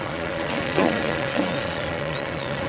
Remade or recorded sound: remade